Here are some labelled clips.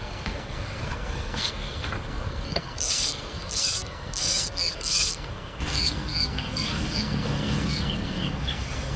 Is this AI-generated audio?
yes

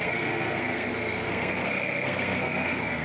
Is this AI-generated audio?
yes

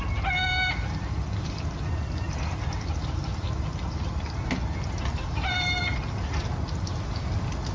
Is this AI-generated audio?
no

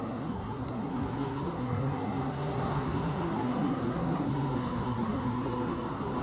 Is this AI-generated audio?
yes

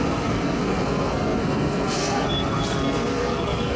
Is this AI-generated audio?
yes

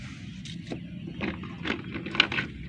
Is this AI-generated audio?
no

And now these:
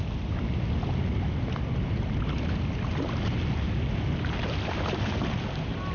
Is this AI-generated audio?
no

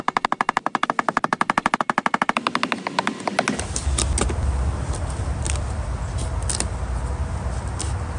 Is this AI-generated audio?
no